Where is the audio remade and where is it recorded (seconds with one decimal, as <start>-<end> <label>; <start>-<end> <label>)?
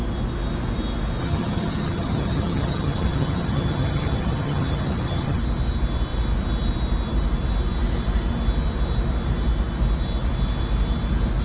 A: 0.0-1.2 recorded; 1.2-5.4 remade; 5.4-11.4 recorded